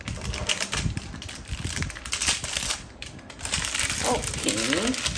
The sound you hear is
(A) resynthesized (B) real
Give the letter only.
B